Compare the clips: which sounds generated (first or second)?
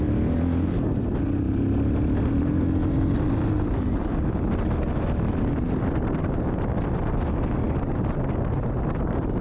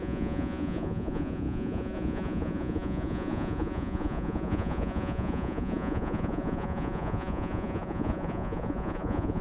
second